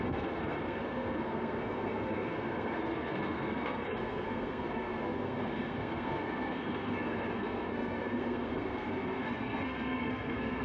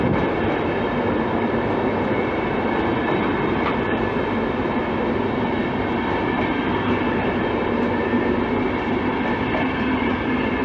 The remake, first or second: first